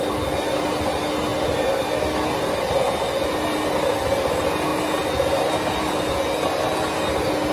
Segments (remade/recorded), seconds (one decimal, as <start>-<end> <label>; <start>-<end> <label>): 0.0-7.5 recorded